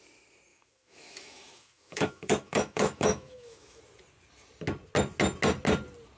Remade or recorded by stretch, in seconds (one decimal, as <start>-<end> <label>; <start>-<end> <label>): 0.0-0.5 recorded; 0.5-3.8 remade; 3.8-6.2 recorded